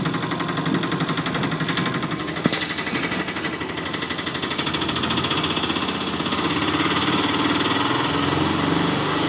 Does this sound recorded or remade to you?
recorded